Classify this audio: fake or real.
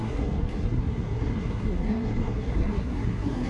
fake